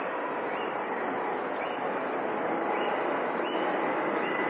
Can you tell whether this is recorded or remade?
recorded